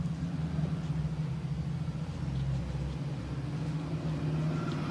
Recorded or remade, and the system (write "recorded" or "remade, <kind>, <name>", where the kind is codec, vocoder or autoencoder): recorded